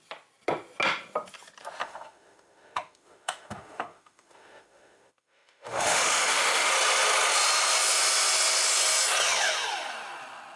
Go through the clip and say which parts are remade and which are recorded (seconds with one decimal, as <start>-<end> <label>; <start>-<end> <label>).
0.0-1.8 recorded; 1.8-6.7 remade; 6.7-10.6 recorded